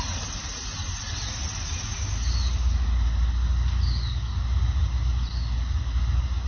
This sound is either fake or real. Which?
real